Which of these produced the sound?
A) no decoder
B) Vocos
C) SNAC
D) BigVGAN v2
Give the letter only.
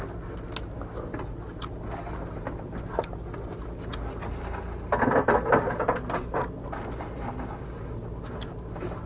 A